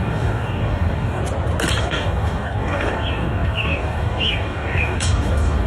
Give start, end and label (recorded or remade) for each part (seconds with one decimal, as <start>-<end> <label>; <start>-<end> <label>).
0.0-1.2 remade; 1.2-1.8 recorded; 1.8-5.7 remade

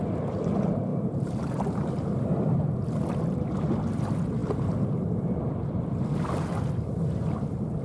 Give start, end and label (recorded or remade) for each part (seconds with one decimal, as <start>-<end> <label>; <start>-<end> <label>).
0.0-0.9 recorded; 0.9-2.0 remade; 2.0-7.8 recorded

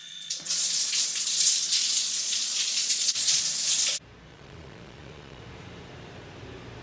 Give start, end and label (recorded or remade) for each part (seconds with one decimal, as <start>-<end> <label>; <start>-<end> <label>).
0.0-3.4 remade; 3.4-4.3 recorded; 4.3-5.4 remade; 5.4-6.8 recorded

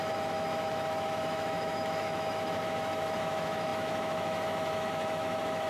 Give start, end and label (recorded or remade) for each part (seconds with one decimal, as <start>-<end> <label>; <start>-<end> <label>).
0.0-5.7 remade